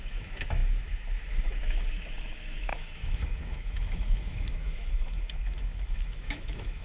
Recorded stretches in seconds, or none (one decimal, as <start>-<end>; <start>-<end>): none